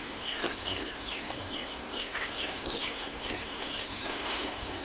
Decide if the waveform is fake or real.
fake